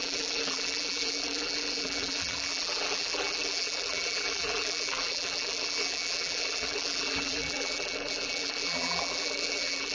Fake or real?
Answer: fake